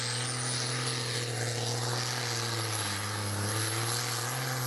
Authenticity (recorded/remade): recorded